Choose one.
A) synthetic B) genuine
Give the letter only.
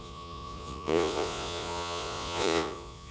A